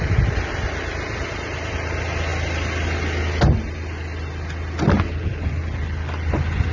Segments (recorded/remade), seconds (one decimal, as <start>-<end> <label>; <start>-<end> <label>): 0.0-6.7 recorded